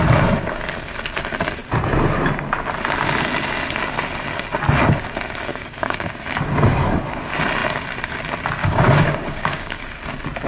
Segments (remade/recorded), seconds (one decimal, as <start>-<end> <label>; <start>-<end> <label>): 0.0-5.5 recorded; 5.5-6.1 remade; 6.1-8.6 recorded; 8.6-9.8 remade; 9.8-10.5 recorded